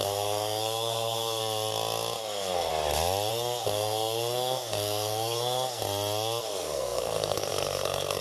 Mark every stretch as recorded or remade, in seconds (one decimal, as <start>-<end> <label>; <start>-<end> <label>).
0.0-1.4 remade; 1.4-2.2 recorded; 2.2-2.7 remade; 2.7-3.3 recorded; 3.3-5.8 remade; 5.8-6.4 recorded; 6.4-8.2 remade